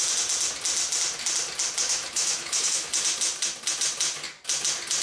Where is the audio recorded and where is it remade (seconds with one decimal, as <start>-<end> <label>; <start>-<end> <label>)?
0.0-1.8 recorded; 1.8-2.9 remade; 2.9-5.0 recorded